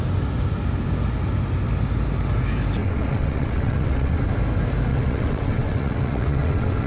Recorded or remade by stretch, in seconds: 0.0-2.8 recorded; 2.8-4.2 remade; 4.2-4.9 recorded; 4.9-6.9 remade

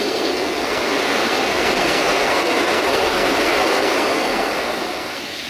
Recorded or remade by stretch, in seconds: 0.0-5.5 remade

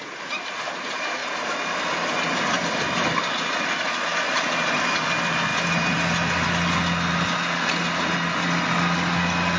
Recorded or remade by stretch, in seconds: 0.0-9.6 recorded

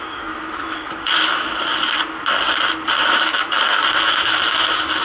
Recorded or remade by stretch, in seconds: 0.0-1.7 remade; 1.7-3.1 recorded; 3.1-5.0 remade

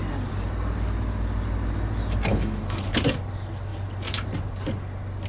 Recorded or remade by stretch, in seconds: 0.0-2.3 recorded; 2.3-2.8 remade; 2.8-5.3 recorded

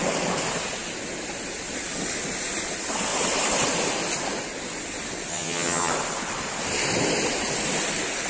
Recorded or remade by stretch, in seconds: 0.0-5.3 recorded; 5.3-5.9 remade; 5.9-8.3 recorded

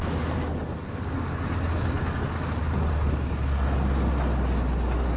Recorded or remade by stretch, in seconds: 0.0-5.2 recorded

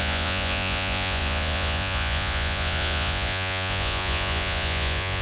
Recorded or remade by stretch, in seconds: 0.0-5.2 remade